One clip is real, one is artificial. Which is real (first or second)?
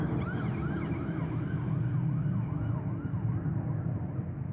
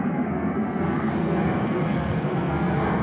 first